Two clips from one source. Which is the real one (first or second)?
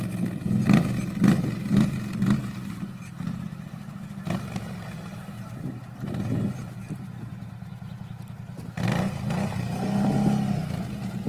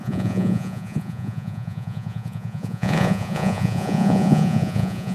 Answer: first